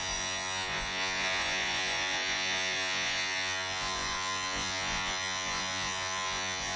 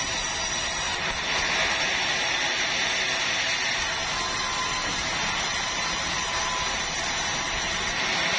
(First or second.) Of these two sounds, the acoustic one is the second